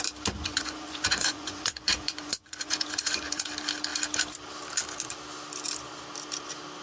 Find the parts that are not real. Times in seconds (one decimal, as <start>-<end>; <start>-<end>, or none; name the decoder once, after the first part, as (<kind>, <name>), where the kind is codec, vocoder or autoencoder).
0.4-3.5 (vocoder, Vocos)